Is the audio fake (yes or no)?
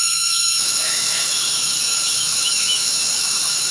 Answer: yes